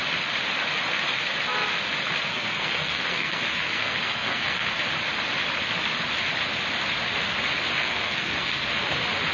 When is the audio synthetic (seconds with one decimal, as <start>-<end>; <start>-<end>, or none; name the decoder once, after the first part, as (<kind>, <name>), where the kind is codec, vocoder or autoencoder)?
2.3-4.8 (codec, SNAC); 7.8-8.7